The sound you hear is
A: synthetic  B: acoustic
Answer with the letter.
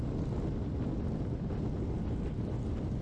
B